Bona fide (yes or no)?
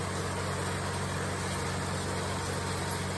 yes